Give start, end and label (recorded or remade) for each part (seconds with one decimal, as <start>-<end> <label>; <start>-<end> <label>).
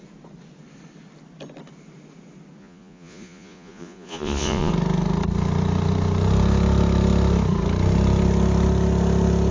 0.0-2.6 recorded; 2.6-4.7 remade; 4.7-9.5 recorded